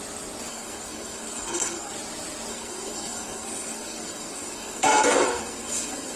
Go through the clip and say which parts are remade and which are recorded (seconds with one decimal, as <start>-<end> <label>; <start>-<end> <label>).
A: 0.0-0.5 recorded; 0.5-1.9 remade; 1.9-2.5 recorded; 2.5-6.2 remade